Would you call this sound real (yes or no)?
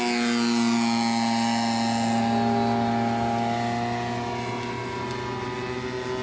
yes